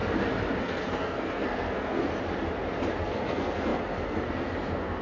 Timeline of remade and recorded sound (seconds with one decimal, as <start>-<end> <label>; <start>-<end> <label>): 0.0-0.6 recorded; 0.6-2.1 remade; 2.1-3.0 recorded; 3.0-5.0 remade